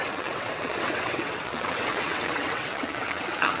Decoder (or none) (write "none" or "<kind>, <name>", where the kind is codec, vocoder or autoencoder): vocoder, WaveNeXt